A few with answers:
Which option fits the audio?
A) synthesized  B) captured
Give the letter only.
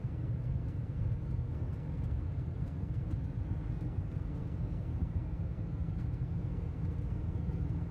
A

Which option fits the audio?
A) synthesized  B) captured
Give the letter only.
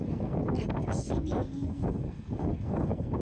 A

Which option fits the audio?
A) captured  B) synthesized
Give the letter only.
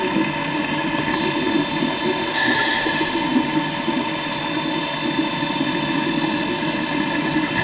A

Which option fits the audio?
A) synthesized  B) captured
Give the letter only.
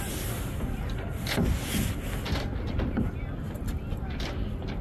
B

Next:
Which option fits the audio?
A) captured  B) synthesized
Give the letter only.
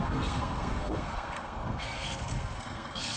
B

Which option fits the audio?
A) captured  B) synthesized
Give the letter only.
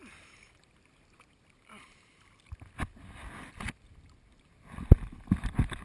A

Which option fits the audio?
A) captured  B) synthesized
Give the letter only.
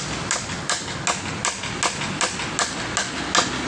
A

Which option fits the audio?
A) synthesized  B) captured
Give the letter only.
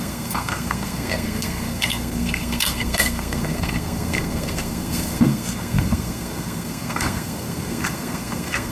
A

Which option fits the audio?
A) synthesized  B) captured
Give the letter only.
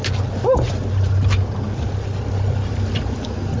B